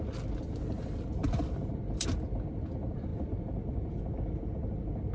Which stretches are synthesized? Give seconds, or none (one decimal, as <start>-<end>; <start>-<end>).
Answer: none